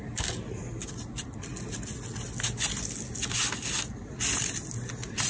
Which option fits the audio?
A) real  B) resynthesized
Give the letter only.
A